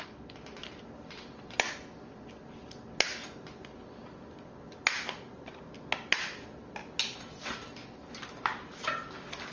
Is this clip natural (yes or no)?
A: yes